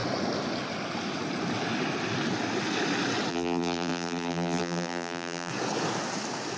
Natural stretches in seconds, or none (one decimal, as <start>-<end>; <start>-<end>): 0.0-3.3; 5.5-6.6